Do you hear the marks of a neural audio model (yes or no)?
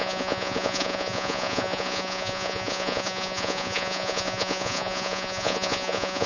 yes